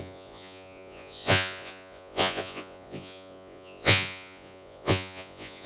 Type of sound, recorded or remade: remade